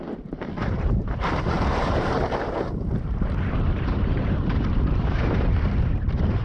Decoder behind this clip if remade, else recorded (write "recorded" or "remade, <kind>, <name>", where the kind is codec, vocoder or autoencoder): remade, vocoder, BigVGAN v2